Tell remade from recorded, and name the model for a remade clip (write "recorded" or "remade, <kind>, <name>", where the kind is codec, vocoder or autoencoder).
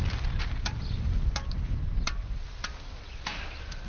recorded